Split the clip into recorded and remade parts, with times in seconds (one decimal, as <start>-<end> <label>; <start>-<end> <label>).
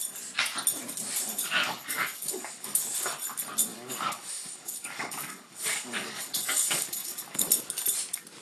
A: 0.0-1.4 recorded; 1.4-2.8 remade; 2.8-3.7 recorded; 3.7-7.5 remade; 7.5-8.4 recorded